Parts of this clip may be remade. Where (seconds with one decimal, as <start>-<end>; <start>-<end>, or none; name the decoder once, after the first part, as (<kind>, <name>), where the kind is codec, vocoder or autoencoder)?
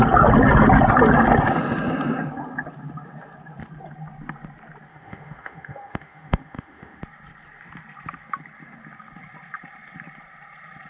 4.9-7.0 (autoencoder, DAC-VAE)